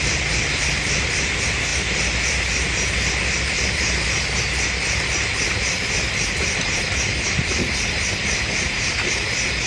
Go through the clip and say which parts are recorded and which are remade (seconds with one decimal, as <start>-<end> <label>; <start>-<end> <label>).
0.0-9.7 recorded